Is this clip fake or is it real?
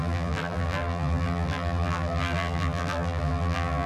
fake